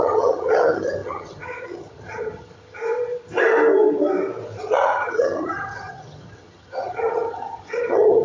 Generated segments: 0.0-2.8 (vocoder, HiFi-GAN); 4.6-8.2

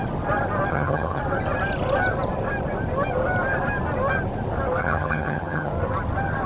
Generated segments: 0.7-1.2 (vocoder, HiFi-GAN); 4.8-5.7